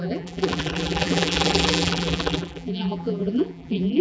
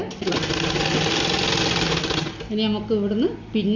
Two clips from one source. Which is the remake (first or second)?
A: first